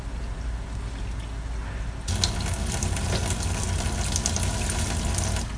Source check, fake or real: real